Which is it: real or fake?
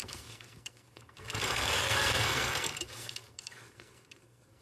fake